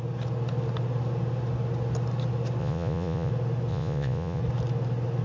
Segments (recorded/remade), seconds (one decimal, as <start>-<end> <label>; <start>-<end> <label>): 0.0-2.6 recorded; 2.6-3.3 remade; 3.3-3.7 recorded; 3.7-4.4 remade; 4.4-5.2 recorded

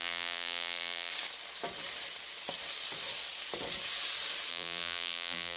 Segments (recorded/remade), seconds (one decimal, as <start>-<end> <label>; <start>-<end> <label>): 0.0-1.1 remade; 1.1-4.5 recorded; 4.5-5.6 remade